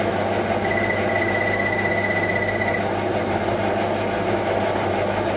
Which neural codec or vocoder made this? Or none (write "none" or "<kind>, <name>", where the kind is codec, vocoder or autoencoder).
none